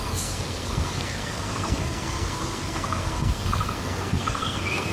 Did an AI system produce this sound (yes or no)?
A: yes